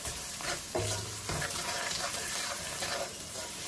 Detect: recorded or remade remade